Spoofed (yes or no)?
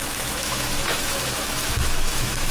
yes